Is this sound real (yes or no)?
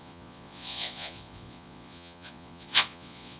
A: no